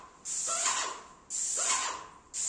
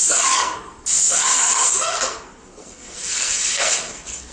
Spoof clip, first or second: second